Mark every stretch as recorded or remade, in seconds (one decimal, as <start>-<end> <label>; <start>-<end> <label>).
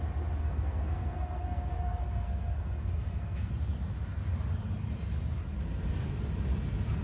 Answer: 0.0-0.4 recorded; 0.4-3.5 remade; 3.5-7.0 recorded